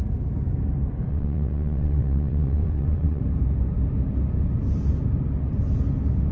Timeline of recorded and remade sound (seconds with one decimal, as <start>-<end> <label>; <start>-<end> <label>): 0.0-1.1 recorded; 1.1-3.2 remade; 3.2-6.3 recorded